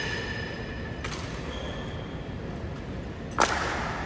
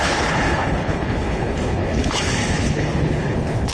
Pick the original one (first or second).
first